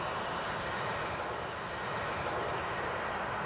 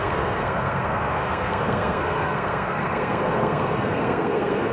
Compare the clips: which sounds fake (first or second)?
second